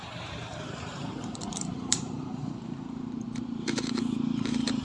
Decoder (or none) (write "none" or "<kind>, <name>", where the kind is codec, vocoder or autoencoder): vocoder, BigVGAN v2